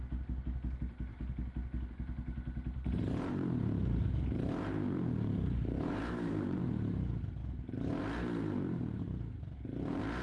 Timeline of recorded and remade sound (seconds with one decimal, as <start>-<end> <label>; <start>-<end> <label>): 0.0-5.3 recorded; 5.3-6.6 remade; 6.6-10.2 recorded